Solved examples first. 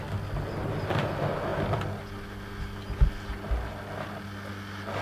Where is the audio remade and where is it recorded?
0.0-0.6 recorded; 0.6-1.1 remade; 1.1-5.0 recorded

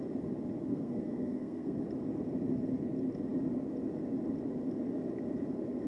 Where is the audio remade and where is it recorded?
0.0-0.7 recorded; 0.7-1.8 remade; 1.8-5.9 recorded

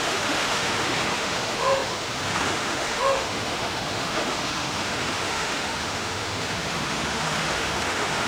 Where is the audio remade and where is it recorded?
0.0-8.3 remade

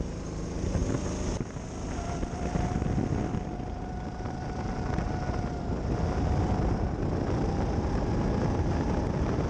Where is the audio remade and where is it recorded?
0.0-9.5 recorded

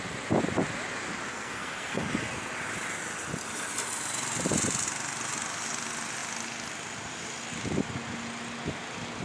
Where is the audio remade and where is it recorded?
0.0-1.3 recorded; 1.3-2.1 remade; 2.1-9.2 recorded

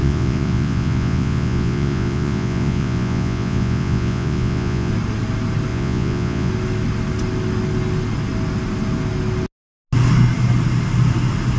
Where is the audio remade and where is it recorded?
0.0-4.9 remade; 4.9-5.7 recorded; 5.7-6.5 remade; 6.5-11.6 recorded

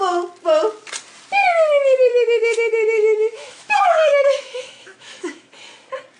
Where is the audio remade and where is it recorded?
0.0-2.1 recorded; 2.1-5.5 remade; 5.5-6.2 recorded

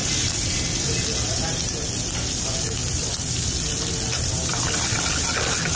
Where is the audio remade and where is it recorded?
0.0-1.0 remade; 1.0-2.8 recorded; 2.8-5.1 remade; 5.1-5.8 recorded